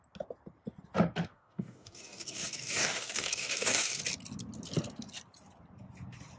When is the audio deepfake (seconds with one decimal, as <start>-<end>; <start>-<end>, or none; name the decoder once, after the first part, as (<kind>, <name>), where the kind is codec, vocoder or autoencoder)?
1.3-4.0 (codec, DAC)